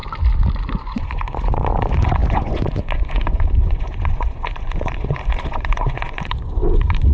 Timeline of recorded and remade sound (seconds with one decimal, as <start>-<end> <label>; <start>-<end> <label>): 0.0-0.8 recorded; 0.8-7.1 remade